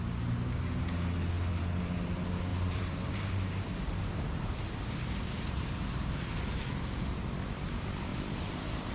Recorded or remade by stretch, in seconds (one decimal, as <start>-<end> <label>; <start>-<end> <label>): 0.0-2.5 recorded; 2.5-6.6 remade; 6.6-8.1 recorded; 8.1-8.9 remade